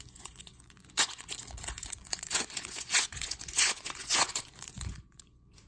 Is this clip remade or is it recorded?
remade